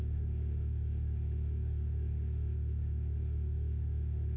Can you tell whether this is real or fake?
fake